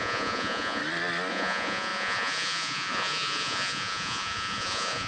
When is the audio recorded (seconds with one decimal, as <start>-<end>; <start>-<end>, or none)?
0.8-1.3